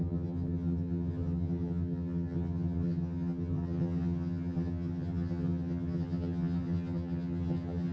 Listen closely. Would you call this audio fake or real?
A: fake